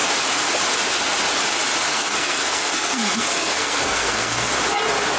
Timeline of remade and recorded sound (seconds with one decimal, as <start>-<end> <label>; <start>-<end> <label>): 0.0-1.9 recorded; 1.9-4.5 remade; 4.5-5.2 recorded